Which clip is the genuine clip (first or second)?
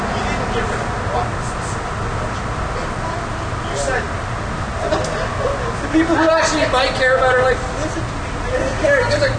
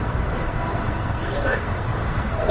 first